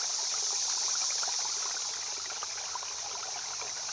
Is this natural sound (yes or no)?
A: yes